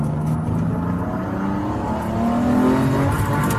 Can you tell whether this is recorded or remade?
recorded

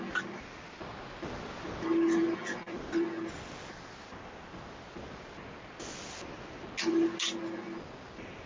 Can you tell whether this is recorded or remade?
recorded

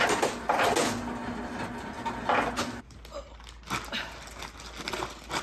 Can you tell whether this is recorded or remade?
recorded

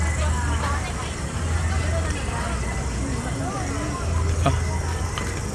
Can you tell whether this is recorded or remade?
recorded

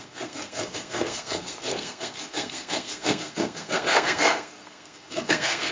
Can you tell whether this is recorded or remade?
remade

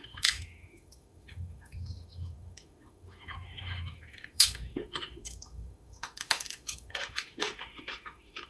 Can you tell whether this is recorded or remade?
remade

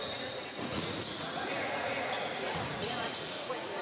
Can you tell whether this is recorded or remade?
remade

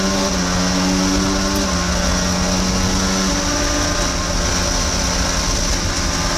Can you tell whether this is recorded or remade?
recorded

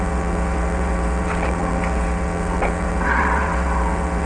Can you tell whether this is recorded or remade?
remade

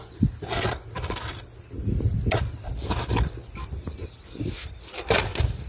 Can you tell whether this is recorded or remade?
recorded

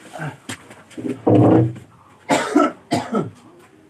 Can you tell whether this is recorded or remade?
recorded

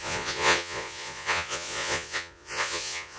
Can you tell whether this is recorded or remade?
remade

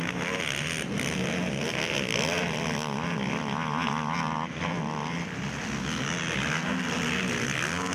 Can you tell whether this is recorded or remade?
recorded